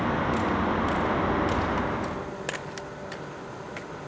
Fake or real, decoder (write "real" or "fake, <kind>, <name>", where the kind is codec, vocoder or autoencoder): real